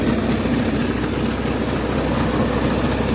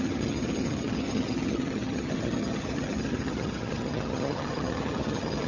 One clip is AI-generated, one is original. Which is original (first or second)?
first